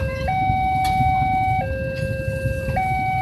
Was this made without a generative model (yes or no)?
yes